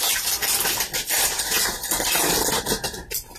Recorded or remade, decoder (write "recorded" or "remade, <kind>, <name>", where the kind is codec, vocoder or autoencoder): recorded